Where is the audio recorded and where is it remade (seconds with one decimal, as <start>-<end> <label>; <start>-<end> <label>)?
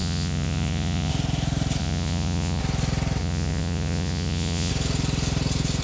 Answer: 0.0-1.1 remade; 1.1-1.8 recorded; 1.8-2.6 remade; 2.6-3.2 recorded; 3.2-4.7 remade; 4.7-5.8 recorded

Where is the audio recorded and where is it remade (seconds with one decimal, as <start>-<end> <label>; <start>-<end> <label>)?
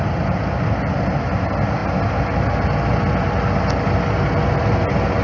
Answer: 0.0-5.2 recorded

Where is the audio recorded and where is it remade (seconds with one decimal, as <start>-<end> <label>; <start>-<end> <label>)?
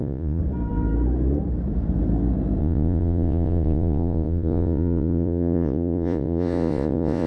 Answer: 0.0-0.4 remade; 0.4-2.6 recorded; 2.6-7.3 remade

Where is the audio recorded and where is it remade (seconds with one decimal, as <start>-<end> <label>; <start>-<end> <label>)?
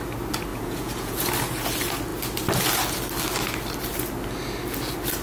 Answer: 0.0-0.5 recorded; 0.5-1.3 remade; 1.3-5.2 recorded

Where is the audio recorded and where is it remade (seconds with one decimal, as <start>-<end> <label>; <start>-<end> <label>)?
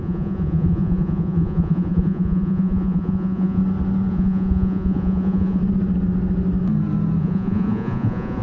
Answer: 0.0-3.6 remade; 3.6-4.1 recorded; 4.1-5.6 remade; 5.6-7.2 recorded; 7.2-8.4 remade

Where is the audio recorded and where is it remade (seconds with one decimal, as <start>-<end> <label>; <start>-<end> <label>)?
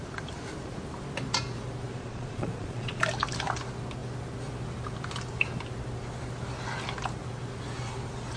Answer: 0.0-1.9 recorded; 1.9-3.0 remade; 3.0-8.4 recorded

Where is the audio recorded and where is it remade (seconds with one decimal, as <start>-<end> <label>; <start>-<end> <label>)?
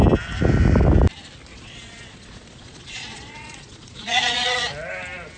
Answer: 0.0-1.5 recorded; 1.5-4.7 remade; 4.7-5.4 recorded